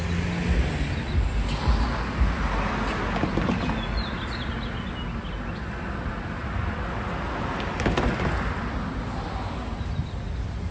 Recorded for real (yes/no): yes